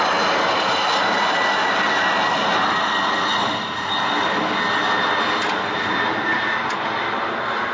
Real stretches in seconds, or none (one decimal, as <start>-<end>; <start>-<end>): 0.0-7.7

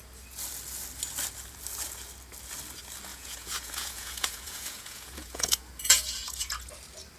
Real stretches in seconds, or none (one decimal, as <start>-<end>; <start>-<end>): 0.0-3.1; 6.7-7.2

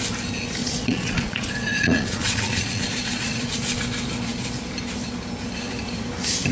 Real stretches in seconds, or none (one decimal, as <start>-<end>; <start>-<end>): 0.0-0.6; 3.5-6.5